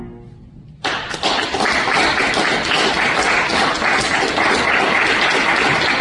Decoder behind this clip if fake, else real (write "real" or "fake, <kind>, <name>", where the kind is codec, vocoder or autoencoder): real